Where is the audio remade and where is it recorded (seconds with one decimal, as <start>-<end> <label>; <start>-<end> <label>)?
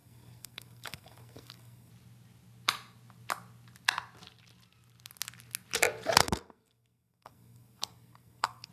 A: 0.0-1.9 remade; 1.9-6.2 recorded; 6.2-8.7 remade